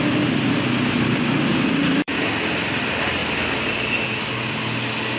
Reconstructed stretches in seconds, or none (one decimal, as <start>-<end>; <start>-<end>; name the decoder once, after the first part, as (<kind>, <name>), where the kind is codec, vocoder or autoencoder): 1.5-2.2 (vocoder, BigVGAN v2)